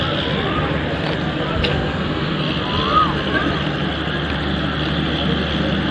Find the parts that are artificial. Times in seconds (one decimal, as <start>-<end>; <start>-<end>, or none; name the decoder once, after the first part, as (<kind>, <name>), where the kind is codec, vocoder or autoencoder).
1.7-2.4 (codec, SNAC)